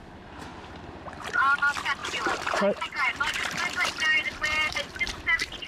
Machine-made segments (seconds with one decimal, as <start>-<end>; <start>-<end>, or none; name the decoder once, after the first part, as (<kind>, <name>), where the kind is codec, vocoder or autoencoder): 0.5-1.3 (vocoder, BigVGAN v2); 2.0-5.0